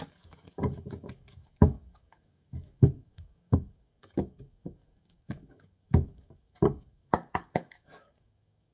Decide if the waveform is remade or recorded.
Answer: remade